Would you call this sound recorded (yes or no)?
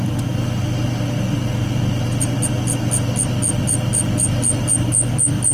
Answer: yes